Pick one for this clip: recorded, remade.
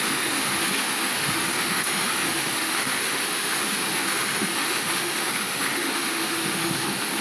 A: remade